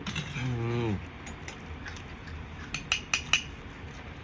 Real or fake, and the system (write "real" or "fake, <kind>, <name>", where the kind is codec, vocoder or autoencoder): real